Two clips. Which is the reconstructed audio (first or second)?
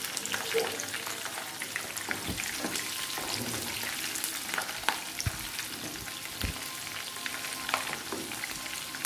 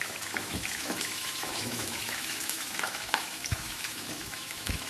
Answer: second